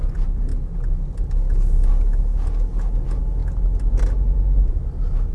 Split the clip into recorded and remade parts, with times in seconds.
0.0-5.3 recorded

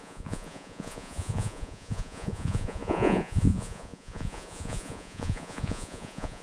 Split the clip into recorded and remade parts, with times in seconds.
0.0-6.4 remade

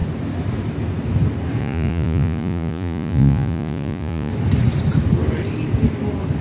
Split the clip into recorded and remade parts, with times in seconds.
0.0-1.6 recorded; 1.6-4.3 remade; 4.3-6.4 recorded